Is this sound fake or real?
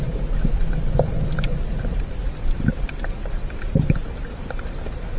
real